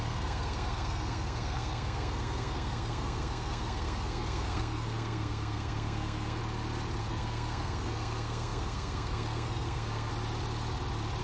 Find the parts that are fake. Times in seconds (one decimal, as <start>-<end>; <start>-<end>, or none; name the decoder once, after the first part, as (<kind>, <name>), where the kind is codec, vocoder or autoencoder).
0.0-6.4 (codec, SNAC); 7.0-10.1